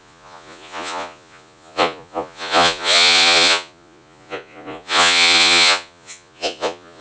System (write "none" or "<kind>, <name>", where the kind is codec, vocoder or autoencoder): vocoder, Vocos